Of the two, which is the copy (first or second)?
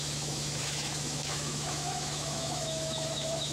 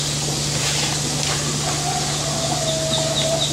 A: first